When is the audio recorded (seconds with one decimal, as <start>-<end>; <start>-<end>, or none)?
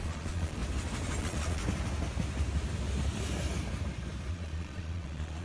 0.6-1.2; 1.6-4.3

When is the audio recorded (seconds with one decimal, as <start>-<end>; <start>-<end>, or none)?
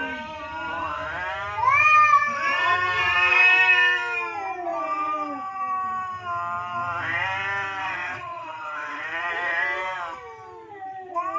0.0-7.8; 9.3-11.4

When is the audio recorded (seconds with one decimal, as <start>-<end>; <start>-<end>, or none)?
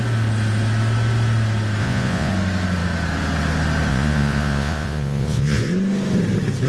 0.0-1.8; 2.3-3.9; 5.7-6.7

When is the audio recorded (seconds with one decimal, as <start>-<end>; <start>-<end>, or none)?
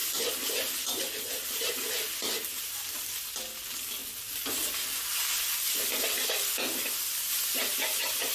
0.0-8.3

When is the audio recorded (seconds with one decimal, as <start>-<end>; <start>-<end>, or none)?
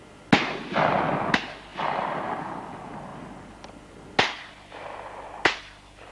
0.0-6.1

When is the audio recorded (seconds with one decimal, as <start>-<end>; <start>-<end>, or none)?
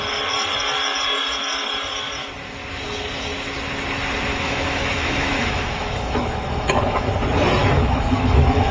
0.0-4.3; 7.1-7.6